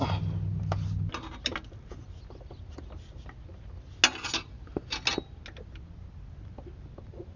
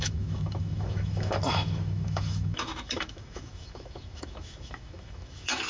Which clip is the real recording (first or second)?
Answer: first